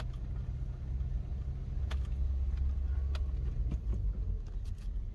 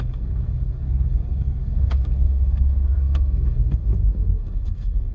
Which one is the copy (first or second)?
second